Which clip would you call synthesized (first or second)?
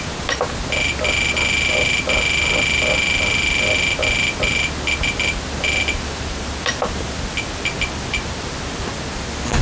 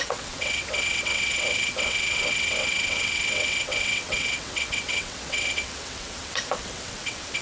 second